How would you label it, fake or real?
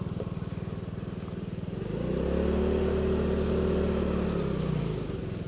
real